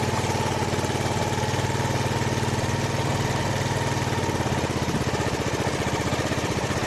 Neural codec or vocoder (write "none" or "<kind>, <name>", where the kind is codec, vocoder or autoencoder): none